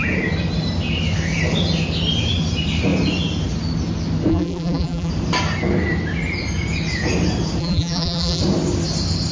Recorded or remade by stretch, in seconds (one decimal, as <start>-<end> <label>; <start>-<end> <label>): 0.0-4.3 recorded; 4.3-5.1 remade; 5.1-7.6 recorded; 7.6-8.4 remade; 8.4-9.3 recorded